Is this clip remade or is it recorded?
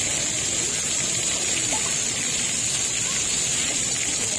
recorded